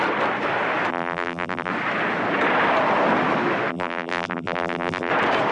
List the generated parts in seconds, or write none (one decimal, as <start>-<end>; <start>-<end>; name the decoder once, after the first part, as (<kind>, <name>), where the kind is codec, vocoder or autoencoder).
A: 0.9-1.7 (vocoder, BigVGAN v2); 3.7-5.1